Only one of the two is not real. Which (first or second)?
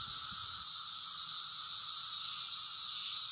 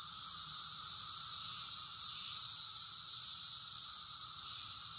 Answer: second